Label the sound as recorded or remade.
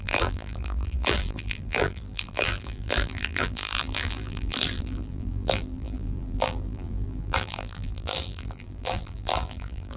remade